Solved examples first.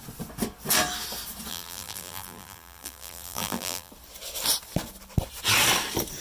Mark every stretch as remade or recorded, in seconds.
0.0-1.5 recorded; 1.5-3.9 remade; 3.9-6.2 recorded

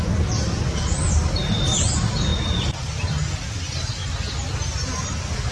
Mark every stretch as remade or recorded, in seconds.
0.0-5.5 recorded